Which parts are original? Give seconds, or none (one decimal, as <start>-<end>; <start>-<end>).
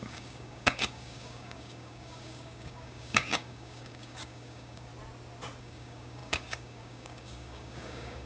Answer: 4.9-5.6